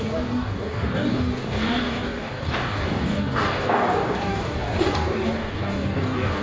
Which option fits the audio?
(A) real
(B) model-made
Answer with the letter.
B